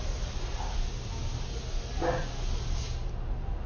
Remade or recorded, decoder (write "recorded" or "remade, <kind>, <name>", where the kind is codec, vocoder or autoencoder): recorded